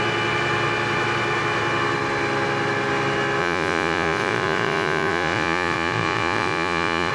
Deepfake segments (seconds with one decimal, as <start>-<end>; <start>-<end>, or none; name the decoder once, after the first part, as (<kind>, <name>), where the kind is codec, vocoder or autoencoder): 3.4-7.1 (vocoder, Vocos)

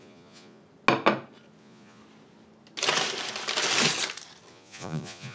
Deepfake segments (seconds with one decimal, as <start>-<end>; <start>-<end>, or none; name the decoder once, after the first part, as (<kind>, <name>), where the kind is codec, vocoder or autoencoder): 0.0-0.6 (vocoder, Vocos); 1.6-2.0; 4.5-5.3

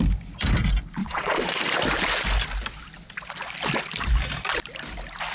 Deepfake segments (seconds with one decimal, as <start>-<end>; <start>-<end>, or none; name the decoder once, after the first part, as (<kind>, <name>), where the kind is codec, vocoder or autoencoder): 1.0-1.5 (vocoder, Vocos)

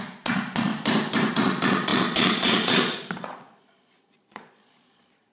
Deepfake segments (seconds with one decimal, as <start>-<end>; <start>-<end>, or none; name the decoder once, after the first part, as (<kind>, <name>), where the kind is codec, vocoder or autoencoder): 0.0-0.7 (vocoder, Vocos); 1.3-5.3

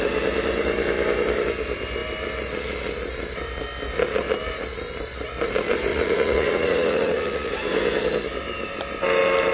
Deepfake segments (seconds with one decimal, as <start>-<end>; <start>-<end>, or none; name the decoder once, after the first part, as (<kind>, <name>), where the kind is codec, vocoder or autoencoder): 5.9-7.5 (vocoder, Vocos)

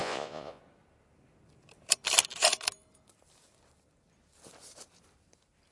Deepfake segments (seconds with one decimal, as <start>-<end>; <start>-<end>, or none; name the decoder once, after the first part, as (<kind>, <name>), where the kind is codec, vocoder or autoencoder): 0.0-0.6 (vocoder, Vocos)

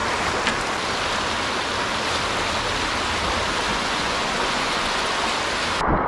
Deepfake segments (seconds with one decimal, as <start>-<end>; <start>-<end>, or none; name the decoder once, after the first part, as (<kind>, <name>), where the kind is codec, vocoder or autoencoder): 3.7-5.2 (vocoder, Vocos)